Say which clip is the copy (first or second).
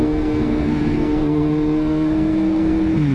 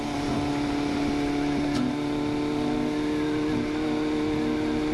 first